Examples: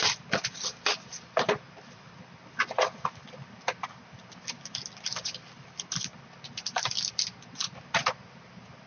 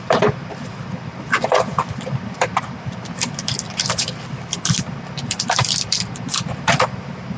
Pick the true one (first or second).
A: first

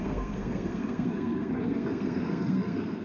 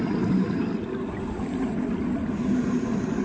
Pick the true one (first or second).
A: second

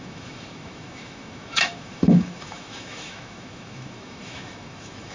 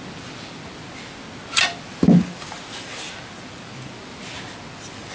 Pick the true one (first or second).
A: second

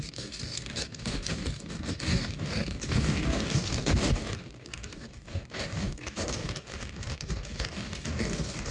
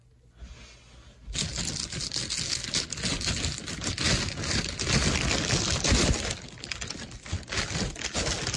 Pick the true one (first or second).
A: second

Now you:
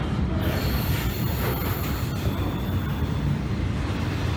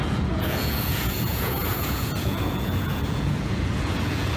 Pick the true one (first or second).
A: first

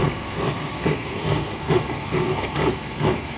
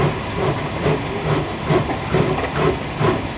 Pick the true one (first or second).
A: second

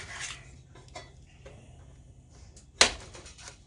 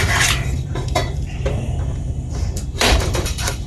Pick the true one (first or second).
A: first